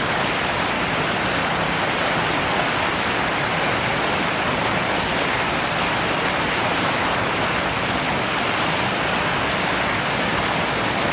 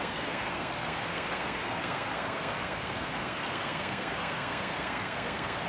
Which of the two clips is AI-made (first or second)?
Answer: second